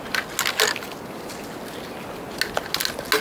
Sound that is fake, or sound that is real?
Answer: real